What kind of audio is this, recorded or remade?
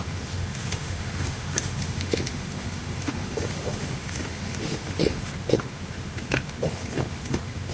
remade